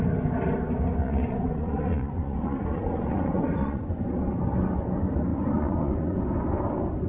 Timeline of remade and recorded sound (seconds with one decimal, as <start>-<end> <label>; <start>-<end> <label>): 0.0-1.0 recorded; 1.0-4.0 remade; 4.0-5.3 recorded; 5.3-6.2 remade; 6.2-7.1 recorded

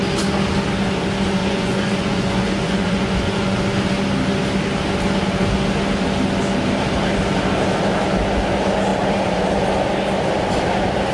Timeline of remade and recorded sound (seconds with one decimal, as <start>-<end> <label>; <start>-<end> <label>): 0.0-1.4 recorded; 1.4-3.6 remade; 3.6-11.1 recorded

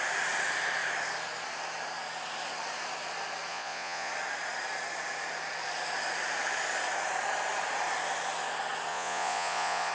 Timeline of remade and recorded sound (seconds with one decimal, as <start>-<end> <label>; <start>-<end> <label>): 0.0-3.5 recorded; 3.5-4.1 remade; 4.1-8.9 recorded; 8.9-9.9 remade

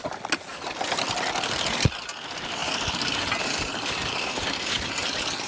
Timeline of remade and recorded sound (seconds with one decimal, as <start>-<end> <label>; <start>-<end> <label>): 0.0-5.5 recorded